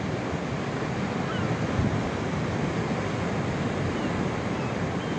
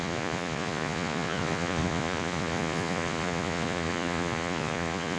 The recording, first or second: first